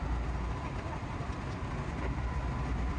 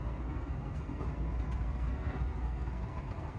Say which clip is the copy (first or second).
second